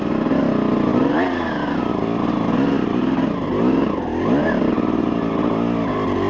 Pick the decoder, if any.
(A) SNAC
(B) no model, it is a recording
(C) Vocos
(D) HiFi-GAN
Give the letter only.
B